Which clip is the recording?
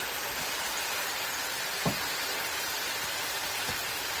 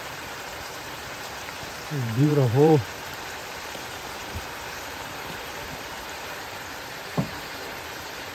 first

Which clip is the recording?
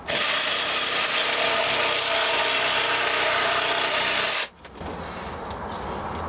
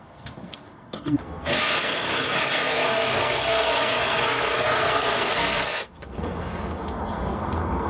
first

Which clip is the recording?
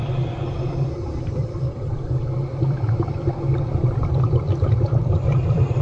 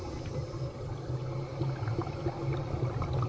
second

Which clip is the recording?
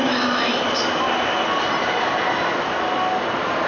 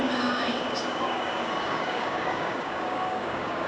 first